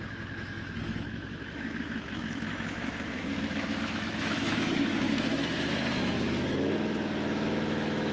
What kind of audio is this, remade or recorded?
remade